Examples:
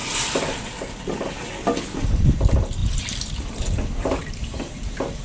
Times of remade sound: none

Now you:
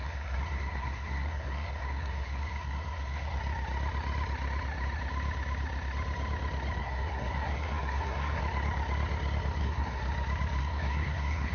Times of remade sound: 0.0-3.4 (codec, SNAC); 6.8-8.4; 9.6-10.0; 10.6-11.5